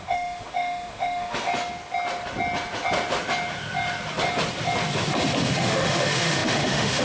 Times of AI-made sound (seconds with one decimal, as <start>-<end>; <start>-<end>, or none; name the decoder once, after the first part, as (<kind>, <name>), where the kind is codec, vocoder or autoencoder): 0.0-1.5 (autoencoder, DAC-VAE); 5.4-7.0